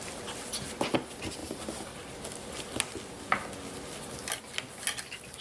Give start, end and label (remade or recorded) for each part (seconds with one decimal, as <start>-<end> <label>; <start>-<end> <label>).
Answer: 0.0-5.4 recorded